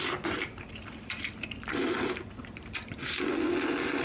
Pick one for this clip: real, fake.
real